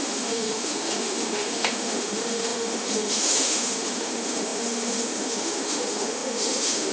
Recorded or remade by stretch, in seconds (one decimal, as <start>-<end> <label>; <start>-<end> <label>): 0.0-6.9 remade